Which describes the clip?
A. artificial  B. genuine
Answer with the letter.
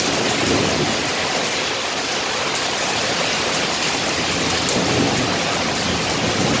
B